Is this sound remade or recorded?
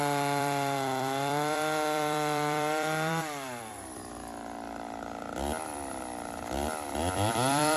remade